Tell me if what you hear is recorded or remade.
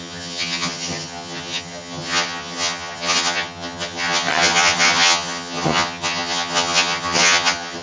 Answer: remade